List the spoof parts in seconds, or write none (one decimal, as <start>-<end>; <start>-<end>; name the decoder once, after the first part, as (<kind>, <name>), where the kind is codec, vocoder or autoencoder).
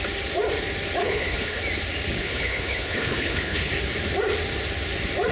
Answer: 1.0-1.6 (codec, HILCodec); 2.2-3.7